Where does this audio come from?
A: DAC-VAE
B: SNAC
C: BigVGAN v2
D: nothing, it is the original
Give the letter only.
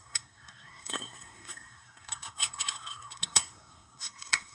B